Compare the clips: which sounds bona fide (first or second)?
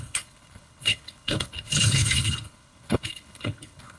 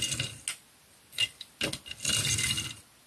second